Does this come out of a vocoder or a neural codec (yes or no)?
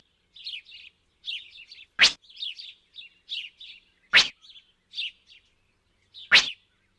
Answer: no